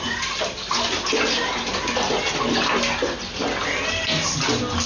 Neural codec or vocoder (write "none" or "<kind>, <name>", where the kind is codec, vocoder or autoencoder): none